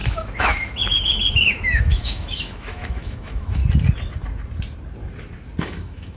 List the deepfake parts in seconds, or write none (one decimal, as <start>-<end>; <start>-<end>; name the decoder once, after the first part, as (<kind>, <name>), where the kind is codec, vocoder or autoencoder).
0.0-3.6 (autoencoder, DAC-VAE); 5.6-6.2